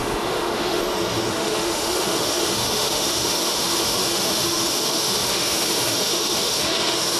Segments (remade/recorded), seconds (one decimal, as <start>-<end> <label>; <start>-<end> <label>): 0.0-0.8 remade; 0.8-1.3 recorded; 1.3-7.2 remade